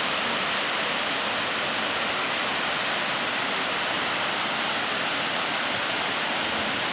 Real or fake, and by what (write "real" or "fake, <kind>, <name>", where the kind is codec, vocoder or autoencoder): real